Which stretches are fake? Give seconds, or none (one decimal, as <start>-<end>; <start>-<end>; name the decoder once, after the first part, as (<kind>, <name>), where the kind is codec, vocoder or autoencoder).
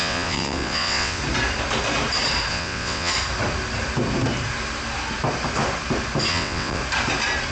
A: 0.0-1.2 (vocoder, WaveNeXt); 2.5-3.1; 6.3-6.8